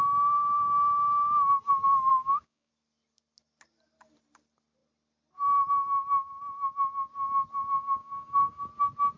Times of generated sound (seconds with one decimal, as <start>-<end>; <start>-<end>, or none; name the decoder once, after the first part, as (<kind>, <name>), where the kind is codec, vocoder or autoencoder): 2.1-2.7 (codec, DAC); 7.7-8.7